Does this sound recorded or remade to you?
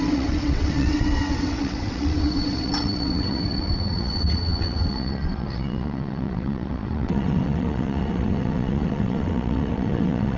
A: remade